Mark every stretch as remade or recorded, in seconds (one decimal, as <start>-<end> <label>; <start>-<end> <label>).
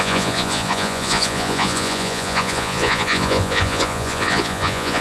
0.0-5.0 remade